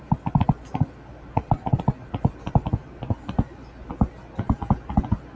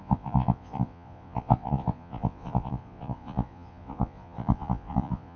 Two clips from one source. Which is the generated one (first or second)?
second